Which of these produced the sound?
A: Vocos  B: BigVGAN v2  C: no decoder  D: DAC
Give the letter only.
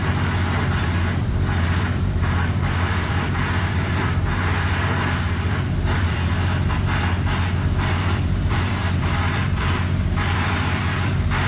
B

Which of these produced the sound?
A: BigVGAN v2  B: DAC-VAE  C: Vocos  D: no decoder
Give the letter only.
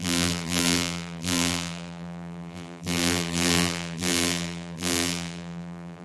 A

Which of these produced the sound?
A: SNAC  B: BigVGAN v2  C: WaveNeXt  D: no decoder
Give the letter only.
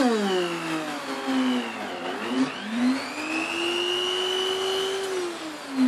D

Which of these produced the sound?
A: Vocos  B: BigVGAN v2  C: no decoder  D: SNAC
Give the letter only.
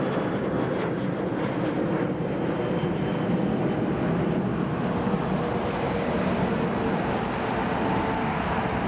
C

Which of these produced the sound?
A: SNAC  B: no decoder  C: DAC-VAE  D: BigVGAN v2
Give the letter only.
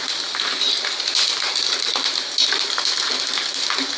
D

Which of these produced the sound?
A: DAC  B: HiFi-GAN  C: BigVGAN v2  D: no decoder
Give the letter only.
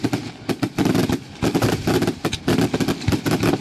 C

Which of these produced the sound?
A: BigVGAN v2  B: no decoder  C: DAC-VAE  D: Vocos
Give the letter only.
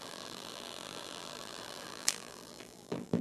A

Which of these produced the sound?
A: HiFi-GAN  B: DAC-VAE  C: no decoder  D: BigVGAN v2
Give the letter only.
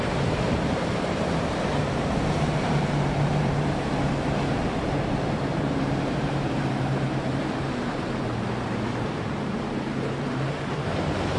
D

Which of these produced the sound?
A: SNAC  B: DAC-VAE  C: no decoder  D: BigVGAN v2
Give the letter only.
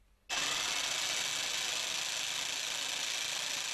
C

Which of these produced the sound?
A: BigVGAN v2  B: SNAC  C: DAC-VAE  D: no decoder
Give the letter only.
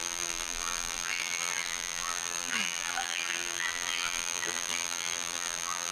A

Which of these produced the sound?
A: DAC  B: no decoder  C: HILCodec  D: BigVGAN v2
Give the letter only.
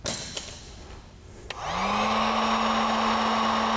B